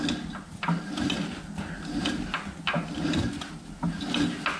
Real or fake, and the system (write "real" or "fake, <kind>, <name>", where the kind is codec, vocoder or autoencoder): real